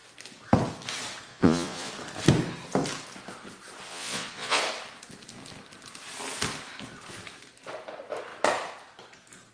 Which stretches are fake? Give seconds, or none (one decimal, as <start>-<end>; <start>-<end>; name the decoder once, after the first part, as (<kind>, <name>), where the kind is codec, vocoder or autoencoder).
1.3-1.9 (vocoder, Vocos); 3.9-4.6